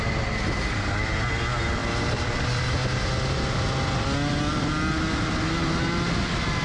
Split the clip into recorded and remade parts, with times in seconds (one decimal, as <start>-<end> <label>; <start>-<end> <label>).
0.0-6.6 recorded